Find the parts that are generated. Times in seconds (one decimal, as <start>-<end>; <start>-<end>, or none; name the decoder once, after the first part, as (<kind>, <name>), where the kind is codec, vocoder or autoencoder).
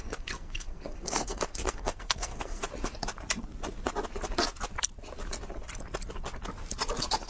0.0-2.6 (codec, SNAC)